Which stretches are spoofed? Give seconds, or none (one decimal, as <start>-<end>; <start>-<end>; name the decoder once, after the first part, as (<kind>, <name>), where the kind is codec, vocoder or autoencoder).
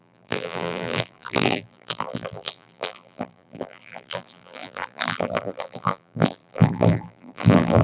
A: 0.0-7.8 (vocoder, BigVGAN v2)